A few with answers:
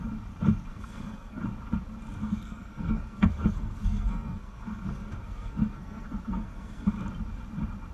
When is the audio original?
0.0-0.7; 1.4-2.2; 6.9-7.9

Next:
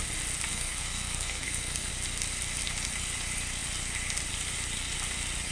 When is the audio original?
0.0-0.5; 1.9-5.5

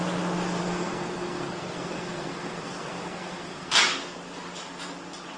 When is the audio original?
0.0-0.6; 3.8-5.4

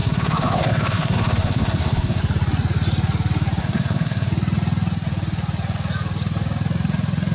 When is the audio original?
2.2-3.6; 4.3-7.3

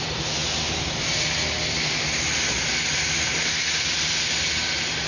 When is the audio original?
0.0-5.1